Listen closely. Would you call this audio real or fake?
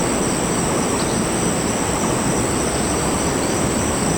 real